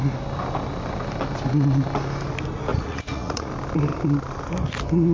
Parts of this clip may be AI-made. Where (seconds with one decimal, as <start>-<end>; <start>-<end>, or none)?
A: 2.7-3.5